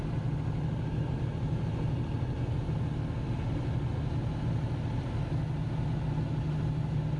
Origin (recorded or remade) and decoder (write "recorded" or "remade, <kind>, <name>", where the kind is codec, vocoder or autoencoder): recorded